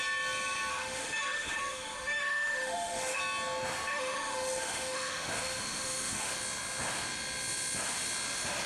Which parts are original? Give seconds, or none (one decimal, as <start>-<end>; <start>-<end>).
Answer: 0.0-0.7; 3.2-3.9; 6.3-8.7